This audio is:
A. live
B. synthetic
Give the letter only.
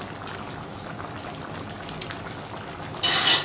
A